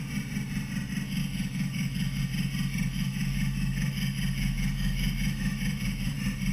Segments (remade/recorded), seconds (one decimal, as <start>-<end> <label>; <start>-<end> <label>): 0.0-1.2 recorded; 1.2-2.2 remade; 2.2-2.9 recorded; 2.9-6.1 remade; 6.1-6.5 recorded